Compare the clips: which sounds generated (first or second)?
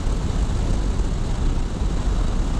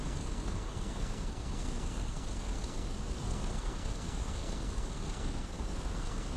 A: second